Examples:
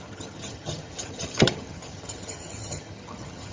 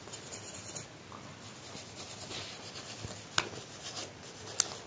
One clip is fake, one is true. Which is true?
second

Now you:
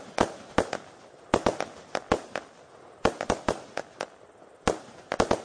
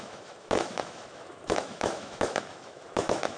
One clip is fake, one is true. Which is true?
first